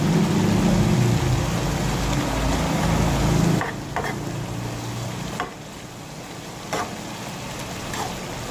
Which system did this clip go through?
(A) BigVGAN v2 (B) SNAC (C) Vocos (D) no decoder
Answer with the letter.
D